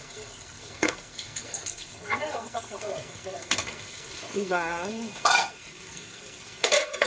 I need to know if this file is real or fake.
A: fake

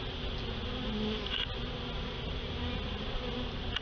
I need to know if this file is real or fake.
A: real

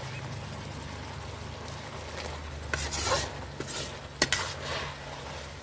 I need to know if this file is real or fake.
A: real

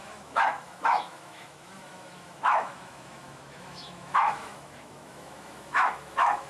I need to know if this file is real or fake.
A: fake